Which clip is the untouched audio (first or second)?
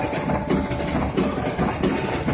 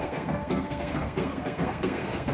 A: first